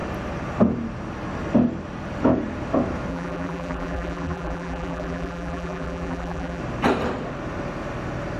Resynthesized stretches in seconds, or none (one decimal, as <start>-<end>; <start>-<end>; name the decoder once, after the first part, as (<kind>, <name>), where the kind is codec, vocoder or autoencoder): 3.1-6.6 (vocoder, BigVGAN v2)